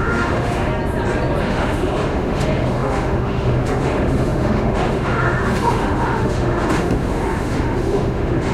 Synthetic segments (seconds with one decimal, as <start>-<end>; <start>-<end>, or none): 0.0-0.7; 1.4-8.5